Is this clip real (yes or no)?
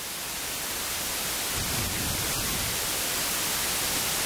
yes